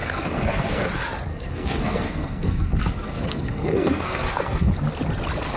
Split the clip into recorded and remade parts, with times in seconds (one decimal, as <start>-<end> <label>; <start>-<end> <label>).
0.0-0.9 remade; 0.9-1.3 recorded; 1.3-4.7 remade; 4.7-5.6 recorded